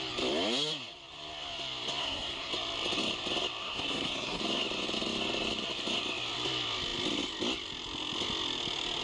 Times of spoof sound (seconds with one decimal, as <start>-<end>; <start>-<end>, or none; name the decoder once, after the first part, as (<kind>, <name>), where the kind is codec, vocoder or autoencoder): 2.0-2.5 (codec, SNAC); 3.6-4.4